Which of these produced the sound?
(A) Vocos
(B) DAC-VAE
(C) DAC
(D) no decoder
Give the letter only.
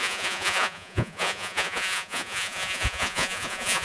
A